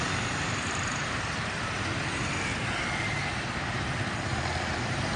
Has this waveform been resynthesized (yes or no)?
no